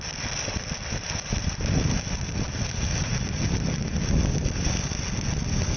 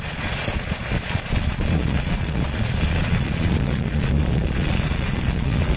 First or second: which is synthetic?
second